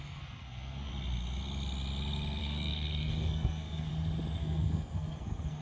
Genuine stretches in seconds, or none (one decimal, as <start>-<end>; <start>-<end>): 0.9-2.4; 3.9-4.4